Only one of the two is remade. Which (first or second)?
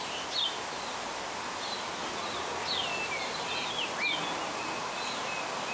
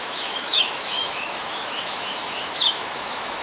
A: second